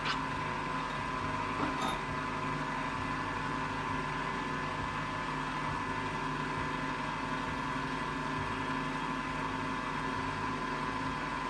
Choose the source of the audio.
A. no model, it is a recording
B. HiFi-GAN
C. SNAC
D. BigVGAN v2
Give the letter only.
A